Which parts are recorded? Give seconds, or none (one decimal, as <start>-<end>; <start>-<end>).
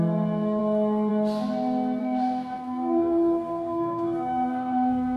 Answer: 0.0-2.0